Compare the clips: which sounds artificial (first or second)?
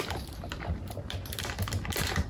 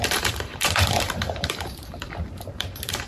second